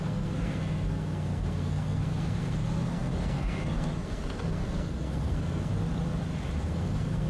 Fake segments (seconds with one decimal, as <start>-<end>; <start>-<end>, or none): 0.0-5.7; 6.6-7.3